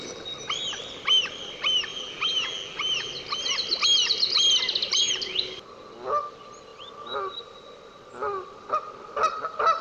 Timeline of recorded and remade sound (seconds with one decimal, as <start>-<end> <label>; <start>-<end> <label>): 0.0-1.9 recorded; 1.9-3.1 remade; 3.1-9.8 recorded